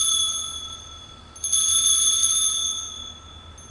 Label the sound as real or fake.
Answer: real